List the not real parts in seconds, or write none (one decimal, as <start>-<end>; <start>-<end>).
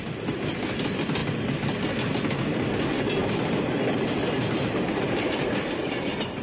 none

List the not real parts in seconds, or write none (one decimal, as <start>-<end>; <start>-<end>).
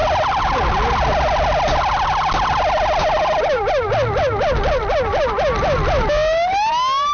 none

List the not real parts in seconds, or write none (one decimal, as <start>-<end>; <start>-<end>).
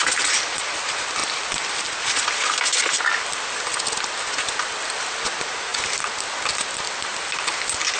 none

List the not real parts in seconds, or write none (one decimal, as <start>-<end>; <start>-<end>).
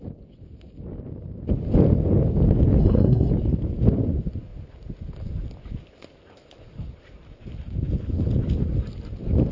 2.8-3.3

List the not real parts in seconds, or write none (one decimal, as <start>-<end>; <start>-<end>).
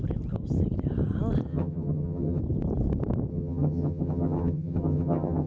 1.5-2.4; 3.3-5.5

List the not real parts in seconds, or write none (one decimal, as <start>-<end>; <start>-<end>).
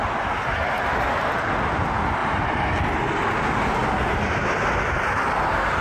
2.2-2.8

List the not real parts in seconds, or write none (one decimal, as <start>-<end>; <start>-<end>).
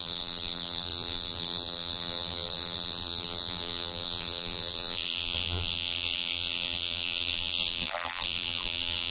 0.0-9.1